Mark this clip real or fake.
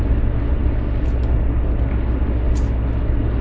real